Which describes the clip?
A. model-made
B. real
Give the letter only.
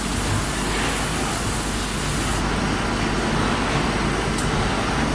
B